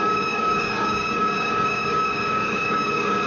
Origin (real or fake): fake